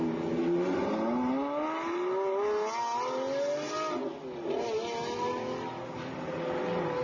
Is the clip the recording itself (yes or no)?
yes